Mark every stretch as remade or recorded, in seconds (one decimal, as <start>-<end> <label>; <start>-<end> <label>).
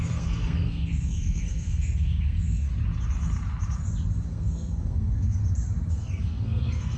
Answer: 0.0-2.7 remade; 2.7-4.3 recorded; 4.3-5.4 remade; 5.4-5.9 recorded; 5.9-7.0 remade